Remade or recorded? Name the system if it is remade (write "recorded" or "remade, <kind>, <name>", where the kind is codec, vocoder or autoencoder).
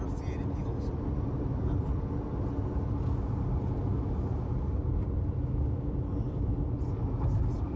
recorded